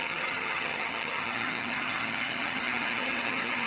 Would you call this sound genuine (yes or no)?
no